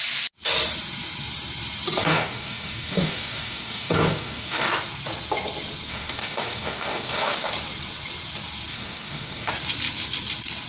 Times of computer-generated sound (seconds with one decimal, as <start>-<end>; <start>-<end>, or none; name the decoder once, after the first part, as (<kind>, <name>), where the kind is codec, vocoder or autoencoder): 2.0-4.7 (codec, DAC); 5.9-7.5; 8.7-9.5